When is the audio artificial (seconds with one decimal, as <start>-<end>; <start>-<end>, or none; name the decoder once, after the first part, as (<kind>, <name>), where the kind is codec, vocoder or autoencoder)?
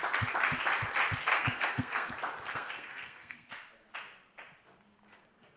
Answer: 1.3-2.1 (codec, SNAC); 2.5-3.5